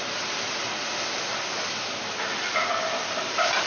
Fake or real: real